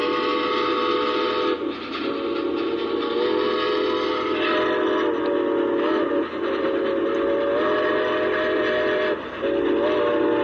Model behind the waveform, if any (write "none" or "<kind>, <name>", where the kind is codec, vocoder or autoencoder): none